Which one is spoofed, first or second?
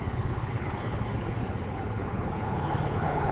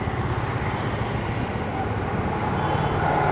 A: first